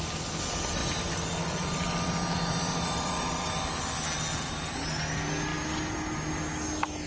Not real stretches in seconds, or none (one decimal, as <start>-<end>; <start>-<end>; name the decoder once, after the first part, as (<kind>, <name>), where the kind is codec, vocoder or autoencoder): 0.8-3.5 (vocoder, BigVGAN v2)